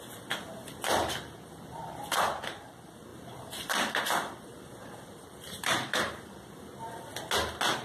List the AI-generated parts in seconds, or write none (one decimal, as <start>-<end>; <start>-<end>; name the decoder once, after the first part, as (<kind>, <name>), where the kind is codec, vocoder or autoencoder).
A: 3.1-6.6 (vocoder, BigVGAN v2)